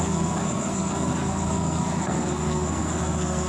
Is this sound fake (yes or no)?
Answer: yes